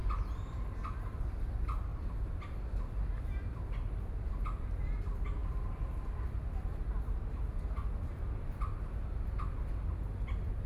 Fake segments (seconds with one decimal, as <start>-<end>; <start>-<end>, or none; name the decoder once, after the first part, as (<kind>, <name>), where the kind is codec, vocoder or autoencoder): none